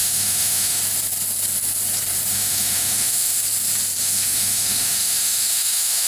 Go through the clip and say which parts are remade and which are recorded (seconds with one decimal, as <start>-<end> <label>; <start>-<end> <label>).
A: 0.0-0.8 remade; 0.8-2.3 recorded; 2.3-3.4 remade; 3.4-4.0 recorded; 4.0-6.1 remade